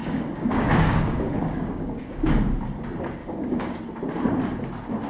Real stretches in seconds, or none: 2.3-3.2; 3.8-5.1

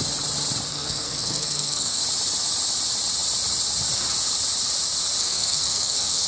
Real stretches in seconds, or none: 0.0-0.7; 2.0-5.2

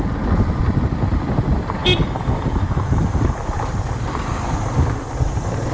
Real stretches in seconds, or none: 0.0-5.7